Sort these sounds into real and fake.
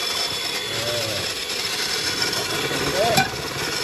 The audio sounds fake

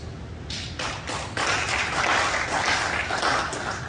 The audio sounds real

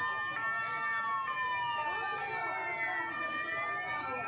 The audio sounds real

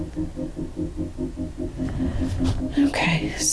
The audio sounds real